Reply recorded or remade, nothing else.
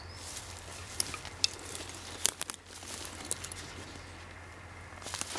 recorded